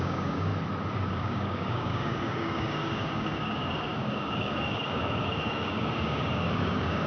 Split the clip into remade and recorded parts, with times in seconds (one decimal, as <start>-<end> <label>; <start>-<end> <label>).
0.0-0.5 remade; 0.5-1.1 recorded; 1.1-7.1 remade